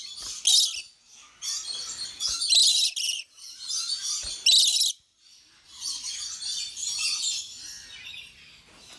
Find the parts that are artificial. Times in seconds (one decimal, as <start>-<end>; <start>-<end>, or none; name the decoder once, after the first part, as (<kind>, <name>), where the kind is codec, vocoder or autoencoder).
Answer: none